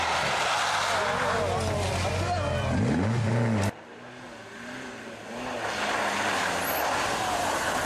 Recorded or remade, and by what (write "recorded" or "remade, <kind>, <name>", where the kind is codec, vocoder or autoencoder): recorded